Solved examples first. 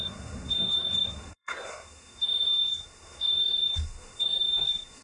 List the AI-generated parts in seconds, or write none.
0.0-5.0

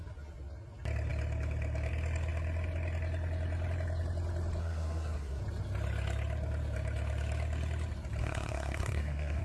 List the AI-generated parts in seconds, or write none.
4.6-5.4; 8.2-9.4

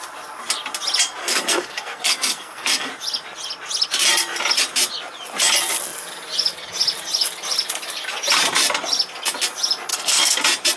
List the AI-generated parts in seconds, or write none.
1.2-2.9; 9.9-10.4

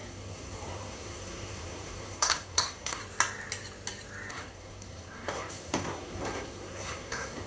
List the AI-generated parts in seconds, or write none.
0.0-3.0; 4.3-7.5

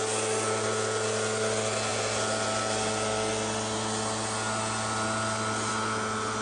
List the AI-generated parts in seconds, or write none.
none

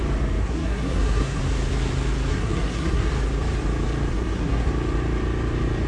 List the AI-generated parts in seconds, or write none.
0.4-1.4; 2.3-3.1; 4.1-4.7

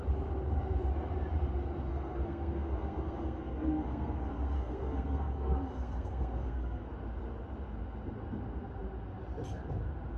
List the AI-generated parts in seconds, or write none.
1.9-6.9

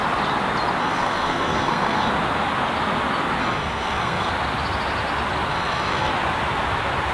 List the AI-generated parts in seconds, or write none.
0.8-2.1; 3.4-4.3; 5.5-6.1